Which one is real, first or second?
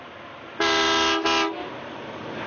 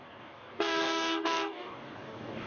first